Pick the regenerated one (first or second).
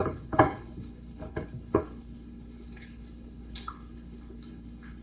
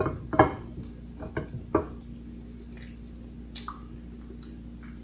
first